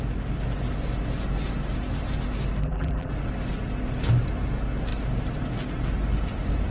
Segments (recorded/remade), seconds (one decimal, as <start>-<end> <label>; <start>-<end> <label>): 0.0-2.6 recorded; 2.6-3.1 remade; 3.1-6.7 recorded